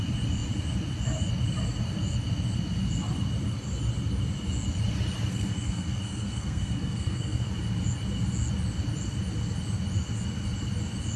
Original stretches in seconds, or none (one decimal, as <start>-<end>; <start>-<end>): 0.0-5.3; 7.5-11.2